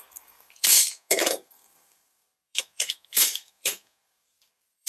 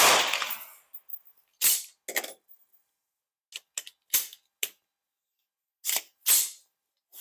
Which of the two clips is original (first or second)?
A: second